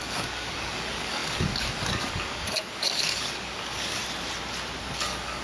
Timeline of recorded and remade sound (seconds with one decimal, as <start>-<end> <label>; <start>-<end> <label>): 0.0-4.0 remade; 4.0-4.8 recorded; 4.8-5.4 remade